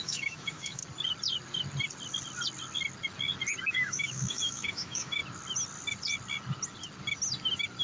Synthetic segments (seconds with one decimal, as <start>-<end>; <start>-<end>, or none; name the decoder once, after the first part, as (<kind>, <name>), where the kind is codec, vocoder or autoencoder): 0.0-0.8 (autoencoder, DAC-VAE); 3.7-5.2